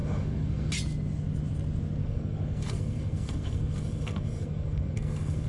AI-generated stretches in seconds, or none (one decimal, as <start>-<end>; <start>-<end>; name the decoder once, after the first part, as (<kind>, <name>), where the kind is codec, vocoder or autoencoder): 0.0-0.7 (codec, SNAC); 2.0-5.5

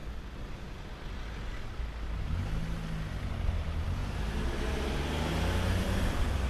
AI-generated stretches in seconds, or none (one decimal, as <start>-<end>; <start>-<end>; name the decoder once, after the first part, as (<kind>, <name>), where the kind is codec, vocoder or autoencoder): none

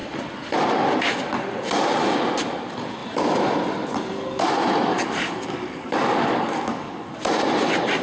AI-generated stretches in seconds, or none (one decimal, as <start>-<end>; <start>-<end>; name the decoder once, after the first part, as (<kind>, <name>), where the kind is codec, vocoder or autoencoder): 4.9-7.1 (codec, DAC)

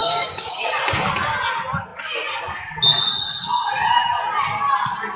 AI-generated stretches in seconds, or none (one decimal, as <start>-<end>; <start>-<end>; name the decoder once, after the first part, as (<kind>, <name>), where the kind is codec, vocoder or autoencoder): 0.0-0.7 (codec, DAC)

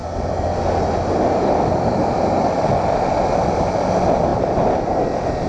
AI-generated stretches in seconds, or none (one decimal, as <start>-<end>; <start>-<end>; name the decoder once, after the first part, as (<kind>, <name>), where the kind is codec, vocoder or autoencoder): none